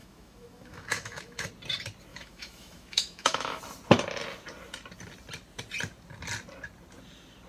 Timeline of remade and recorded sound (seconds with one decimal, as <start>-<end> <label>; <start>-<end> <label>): 0.0-1.5 remade; 1.5-2.1 recorded; 2.1-3.6 remade; 3.6-7.5 recorded